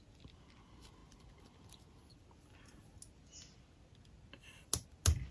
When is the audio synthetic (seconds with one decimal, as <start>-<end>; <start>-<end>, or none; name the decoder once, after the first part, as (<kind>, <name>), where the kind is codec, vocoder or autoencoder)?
none